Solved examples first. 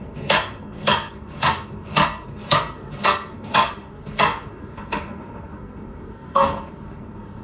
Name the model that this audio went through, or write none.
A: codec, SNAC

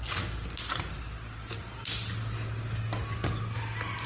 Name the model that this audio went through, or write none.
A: none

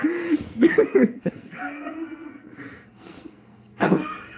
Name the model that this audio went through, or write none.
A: codec, SNAC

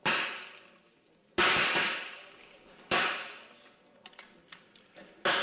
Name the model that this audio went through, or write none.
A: none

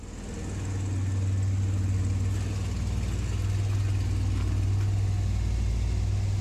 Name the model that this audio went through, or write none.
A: none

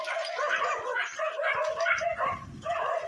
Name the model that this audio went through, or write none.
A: none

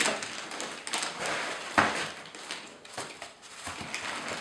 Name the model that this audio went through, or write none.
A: none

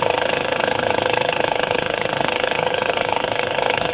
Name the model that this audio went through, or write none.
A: codec, SNAC